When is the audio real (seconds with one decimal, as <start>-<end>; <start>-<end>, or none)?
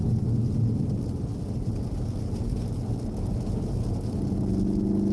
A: 0.0-5.1